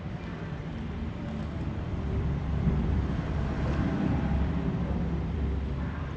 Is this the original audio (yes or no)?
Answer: no